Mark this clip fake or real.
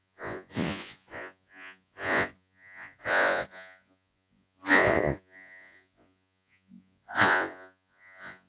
fake